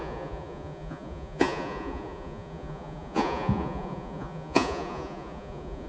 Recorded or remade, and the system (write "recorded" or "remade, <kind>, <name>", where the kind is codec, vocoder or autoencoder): remade, vocoder, Vocos